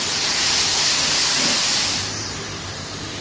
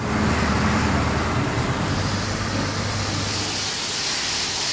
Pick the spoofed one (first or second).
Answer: first